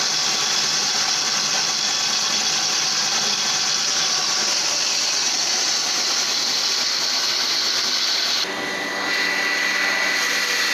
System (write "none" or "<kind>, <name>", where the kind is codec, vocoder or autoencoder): none